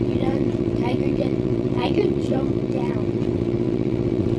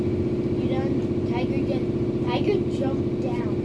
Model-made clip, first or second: first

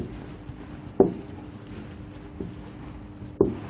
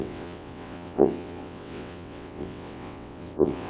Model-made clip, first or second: second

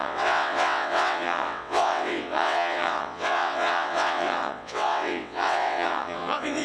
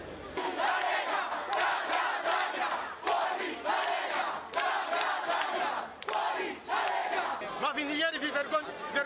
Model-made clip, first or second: first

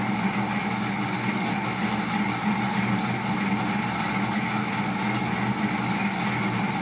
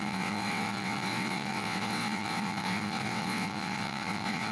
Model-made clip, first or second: second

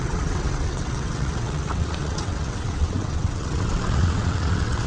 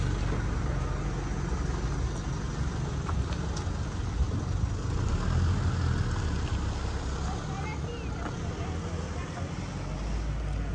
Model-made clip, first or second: first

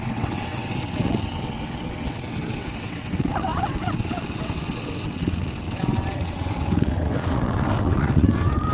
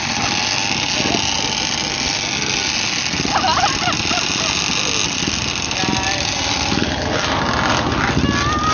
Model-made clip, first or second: first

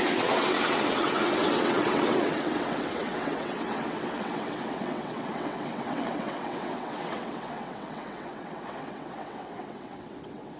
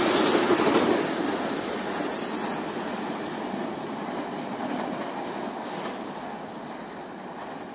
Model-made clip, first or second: first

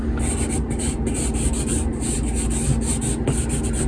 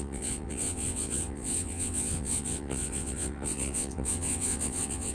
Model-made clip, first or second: second